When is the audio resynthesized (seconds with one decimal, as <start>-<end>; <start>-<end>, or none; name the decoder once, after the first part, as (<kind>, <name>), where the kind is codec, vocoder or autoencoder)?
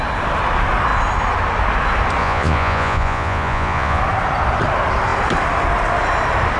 2.2-4.0 (vocoder, Vocos)